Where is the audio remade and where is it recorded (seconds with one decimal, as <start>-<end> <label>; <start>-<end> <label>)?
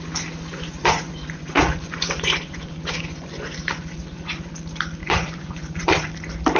0.0-0.5 recorded; 0.5-4.5 remade; 4.5-5.0 recorded; 5.0-6.1 remade; 6.1-6.6 recorded